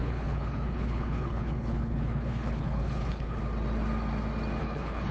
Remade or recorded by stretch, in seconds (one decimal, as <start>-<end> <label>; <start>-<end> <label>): 0.0-3.4 remade; 3.4-4.6 recorded; 4.6-5.1 remade